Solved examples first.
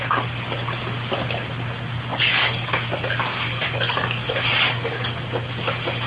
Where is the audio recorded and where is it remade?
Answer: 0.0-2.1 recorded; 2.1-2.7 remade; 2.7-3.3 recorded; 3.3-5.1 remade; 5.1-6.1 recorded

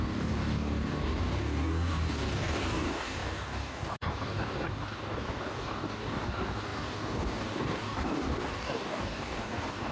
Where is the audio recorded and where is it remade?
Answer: 0.0-9.9 remade

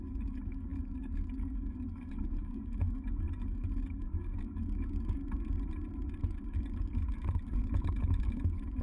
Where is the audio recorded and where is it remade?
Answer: 0.0-5.2 remade; 5.2-6.3 recorded; 6.3-8.8 remade

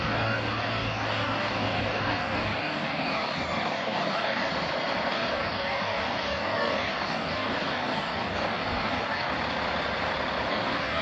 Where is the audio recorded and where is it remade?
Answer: 0.0-4.5 remade; 4.5-5.1 recorded; 5.1-9.3 remade; 9.3-10.5 recorded; 10.5-11.0 remade

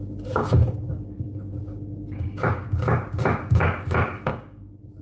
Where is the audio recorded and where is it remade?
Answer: 0.0-5.0 remade